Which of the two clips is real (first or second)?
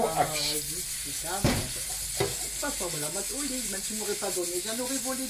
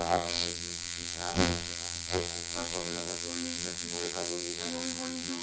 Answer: first